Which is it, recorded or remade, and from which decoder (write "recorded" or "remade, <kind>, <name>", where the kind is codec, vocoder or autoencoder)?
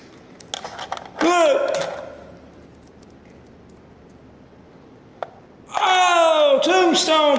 recorded